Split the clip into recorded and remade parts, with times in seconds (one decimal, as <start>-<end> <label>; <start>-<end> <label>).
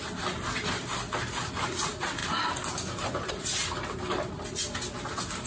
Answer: 0.0-5.5 recorded